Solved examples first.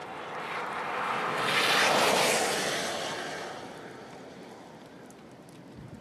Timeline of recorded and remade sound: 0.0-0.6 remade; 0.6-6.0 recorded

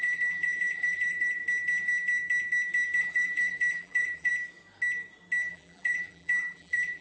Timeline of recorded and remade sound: 0.0-1.4 remade; 1.4-3.0 recorded; 3.0-4.3 remade; 4.3-5.5 recorded; 5.5-7.0 remade

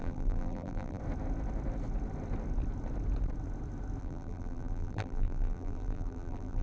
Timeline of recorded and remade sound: 0.0-1.0 remade; 1.0-4.0 recorded; 4.0-6.6 remade

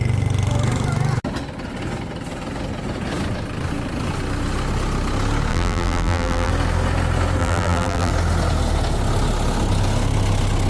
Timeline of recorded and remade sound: 0.0-5.5 recorded; 5.5-6.5 remade; 6.5-7.4 recorded; 7.4-8.1 remade; 8.1-10.7 recorded

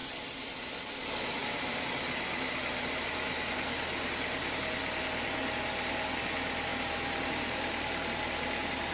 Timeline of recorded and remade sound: 0.0-1.4 remade; 1.4-6.2 recorded; 6.2-8.9 remade

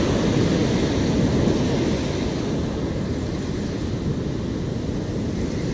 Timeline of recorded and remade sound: 0.0-5.7 recorded

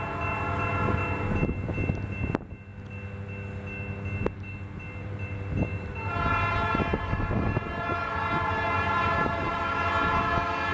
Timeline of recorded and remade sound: 0.0-5.0 recorded; 5.0-9.6 remade; 9.6-10.7 recorded

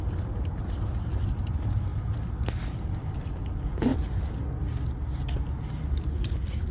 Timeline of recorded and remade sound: 0.0-6.7 recorded